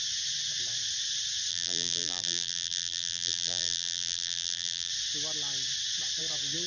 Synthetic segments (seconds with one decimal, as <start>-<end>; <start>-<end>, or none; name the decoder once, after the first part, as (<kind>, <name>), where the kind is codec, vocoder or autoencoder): 1.5-4.9 (vocoder, BigVGAN v2)